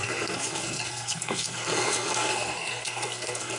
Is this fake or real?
fake